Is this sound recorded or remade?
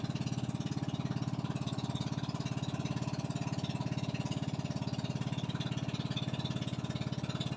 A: recorded